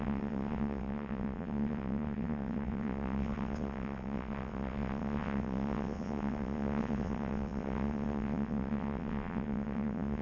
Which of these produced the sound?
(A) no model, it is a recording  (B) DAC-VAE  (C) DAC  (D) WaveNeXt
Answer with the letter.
D